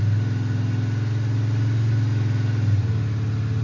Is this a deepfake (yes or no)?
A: no